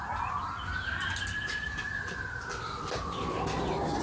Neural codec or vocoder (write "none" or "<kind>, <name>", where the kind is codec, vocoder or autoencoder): none